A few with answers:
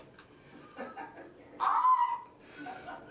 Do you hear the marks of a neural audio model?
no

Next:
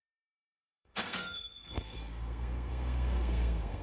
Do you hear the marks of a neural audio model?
yes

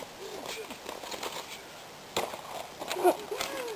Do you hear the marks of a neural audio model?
no